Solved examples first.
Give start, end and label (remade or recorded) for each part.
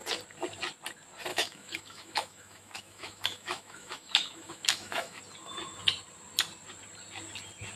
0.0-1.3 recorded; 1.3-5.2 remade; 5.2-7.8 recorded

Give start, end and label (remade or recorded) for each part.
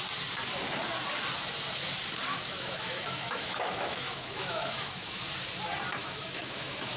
0.0-2.3 recorded; 2.3-5.2 remade; 5.2-6.0 recorded; 6.0-7.0 remade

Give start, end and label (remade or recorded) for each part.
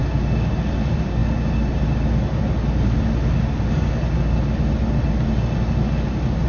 0.0-6.5 recorded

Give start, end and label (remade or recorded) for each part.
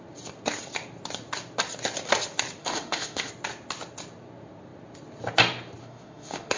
0.0-2.6 recorded; 2.6-3.3 remade; 3.3-5.8 recorded; 5.8-6.6 remade